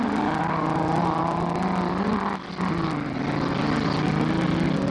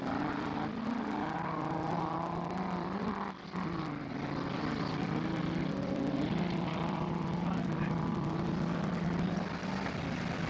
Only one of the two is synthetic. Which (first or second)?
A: second